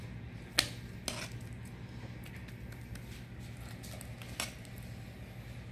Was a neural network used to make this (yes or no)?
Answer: no